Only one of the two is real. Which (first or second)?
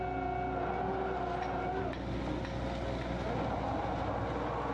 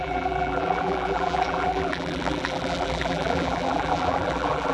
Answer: first